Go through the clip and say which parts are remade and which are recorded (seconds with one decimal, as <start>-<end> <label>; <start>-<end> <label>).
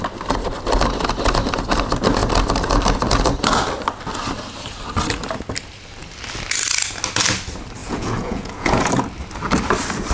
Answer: 0.0-7.8 recorded; 7.8-8.9 remade; 8.9-10.1 recorded